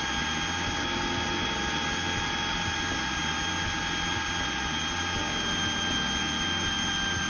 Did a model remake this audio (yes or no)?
no